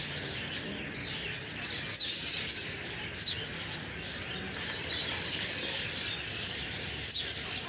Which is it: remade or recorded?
recorded